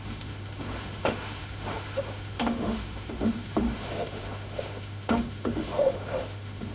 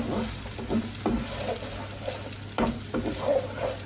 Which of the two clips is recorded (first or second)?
second